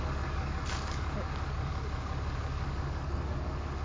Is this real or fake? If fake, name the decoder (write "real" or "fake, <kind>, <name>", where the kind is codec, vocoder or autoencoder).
fake, codec, DAC